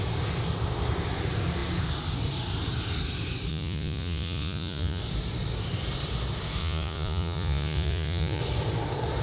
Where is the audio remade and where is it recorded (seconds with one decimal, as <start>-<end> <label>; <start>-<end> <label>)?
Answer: 0.0-3.5 recorded; 3.5-5.0 remade; 5.0-6.6 recorded; 6.6-8.4 remade; 8.4-9.2 recorded